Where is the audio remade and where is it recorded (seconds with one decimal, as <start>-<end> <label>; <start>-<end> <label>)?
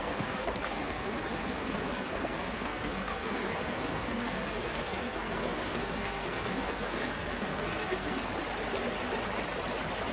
0.0-8.3 remade; 8.3-10.1 recorded